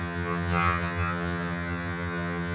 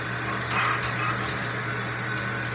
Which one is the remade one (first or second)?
first